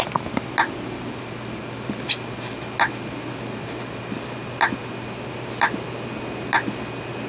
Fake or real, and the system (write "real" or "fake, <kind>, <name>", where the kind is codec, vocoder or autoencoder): real